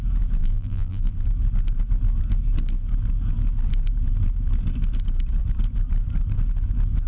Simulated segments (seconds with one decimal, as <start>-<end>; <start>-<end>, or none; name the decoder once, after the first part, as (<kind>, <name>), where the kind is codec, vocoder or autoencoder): 0.4-1.1 (vocoder, BigVGAN v2)